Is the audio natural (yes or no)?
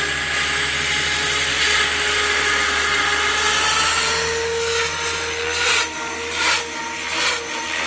yes